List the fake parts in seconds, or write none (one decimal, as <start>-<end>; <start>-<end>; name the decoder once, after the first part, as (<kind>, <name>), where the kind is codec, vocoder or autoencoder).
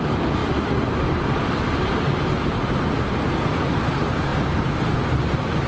none